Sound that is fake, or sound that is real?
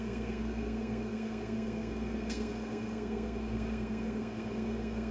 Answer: fake